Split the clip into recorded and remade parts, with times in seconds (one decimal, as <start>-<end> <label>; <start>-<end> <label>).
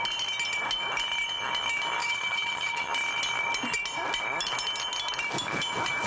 0.0-2.0 recorded; 2.0-2.9 remade; 2.9-6.1 recorded